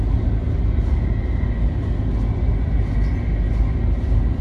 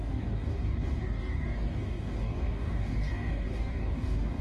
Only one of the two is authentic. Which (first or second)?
first